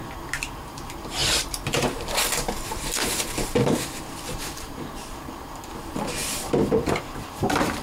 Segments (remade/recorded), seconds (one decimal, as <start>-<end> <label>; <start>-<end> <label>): 0.0-7.8 remade